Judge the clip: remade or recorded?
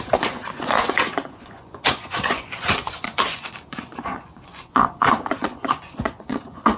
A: remade